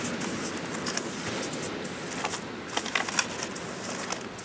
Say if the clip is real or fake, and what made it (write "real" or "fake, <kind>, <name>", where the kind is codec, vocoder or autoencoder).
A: real